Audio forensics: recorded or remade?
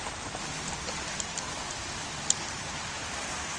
remade